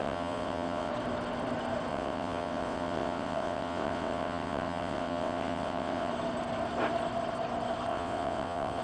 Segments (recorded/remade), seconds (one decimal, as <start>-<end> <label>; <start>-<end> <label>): 0.0-0.9 remade; 0.9-1.9 recorded; 1.9-6.1 remade; 6.1-7.9 recorded; 7.9-8.8 remade